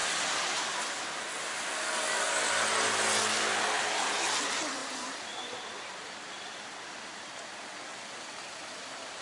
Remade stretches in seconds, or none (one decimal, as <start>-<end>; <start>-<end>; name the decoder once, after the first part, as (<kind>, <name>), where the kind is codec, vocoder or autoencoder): 4.8-7.4 (vocoder, BigVGAN v2); 7.9-9.2